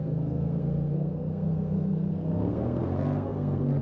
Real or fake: fake